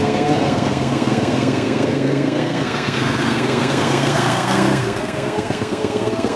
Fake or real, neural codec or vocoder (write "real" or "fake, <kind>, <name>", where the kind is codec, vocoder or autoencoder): fake, codec, SNAC